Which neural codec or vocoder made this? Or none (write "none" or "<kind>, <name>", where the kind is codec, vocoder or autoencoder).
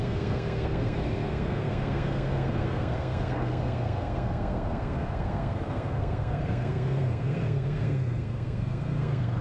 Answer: codec, SNAC